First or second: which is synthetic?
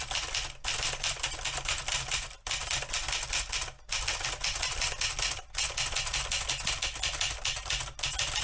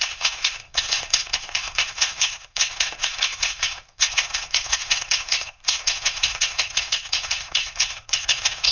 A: second